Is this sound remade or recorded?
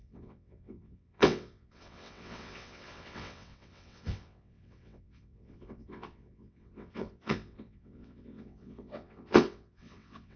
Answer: remade